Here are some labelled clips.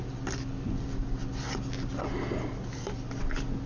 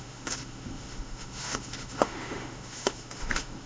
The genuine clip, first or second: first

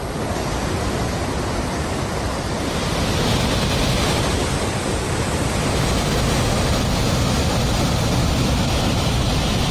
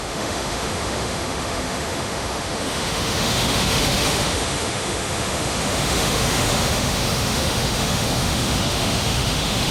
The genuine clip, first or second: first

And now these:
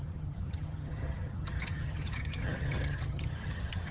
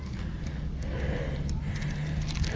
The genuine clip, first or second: second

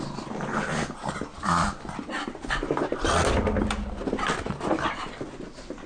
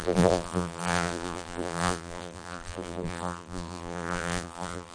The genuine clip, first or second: first